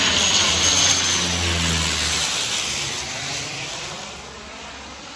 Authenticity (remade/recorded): recorded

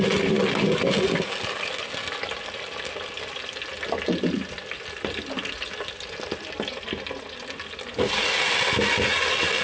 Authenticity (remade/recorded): recorded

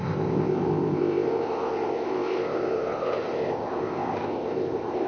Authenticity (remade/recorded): remade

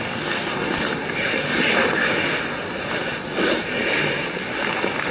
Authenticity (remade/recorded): recorded